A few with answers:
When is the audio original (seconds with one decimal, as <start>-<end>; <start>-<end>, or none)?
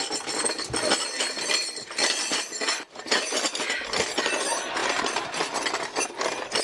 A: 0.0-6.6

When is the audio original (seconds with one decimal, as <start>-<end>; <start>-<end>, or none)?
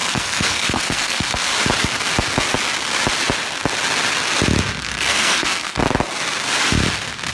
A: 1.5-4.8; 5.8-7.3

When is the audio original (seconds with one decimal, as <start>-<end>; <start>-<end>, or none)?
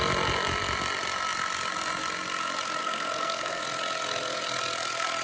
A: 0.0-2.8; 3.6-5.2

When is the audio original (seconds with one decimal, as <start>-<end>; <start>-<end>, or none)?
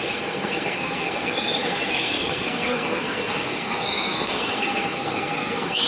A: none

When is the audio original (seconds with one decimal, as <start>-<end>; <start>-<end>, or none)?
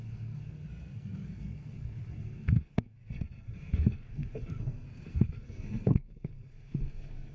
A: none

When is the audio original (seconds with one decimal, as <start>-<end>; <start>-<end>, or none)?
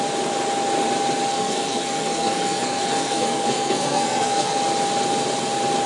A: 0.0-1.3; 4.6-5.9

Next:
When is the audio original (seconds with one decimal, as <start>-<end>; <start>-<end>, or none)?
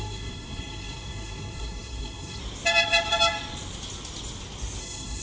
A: 2.4-4.8